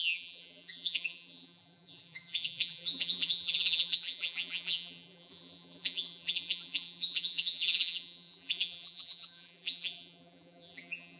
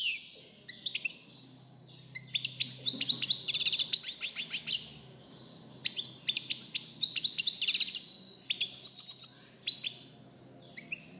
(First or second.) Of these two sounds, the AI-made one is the first